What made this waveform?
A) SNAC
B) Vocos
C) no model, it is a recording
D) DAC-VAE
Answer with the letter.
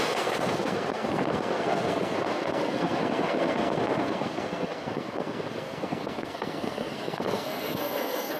A